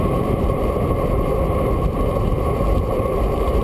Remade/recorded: remade